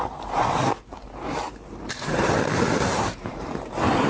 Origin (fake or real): fake